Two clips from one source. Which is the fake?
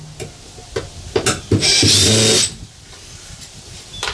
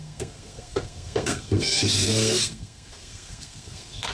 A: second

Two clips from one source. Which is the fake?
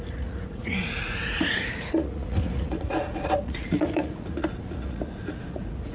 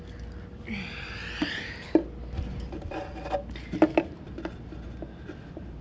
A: first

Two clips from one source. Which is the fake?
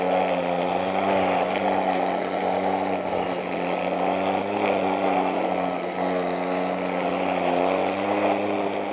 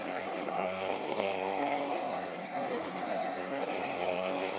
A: second